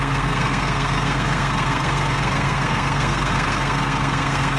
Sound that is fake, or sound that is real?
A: fake